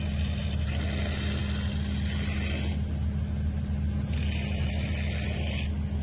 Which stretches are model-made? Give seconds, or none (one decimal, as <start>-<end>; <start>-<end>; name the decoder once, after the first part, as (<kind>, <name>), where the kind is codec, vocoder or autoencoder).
none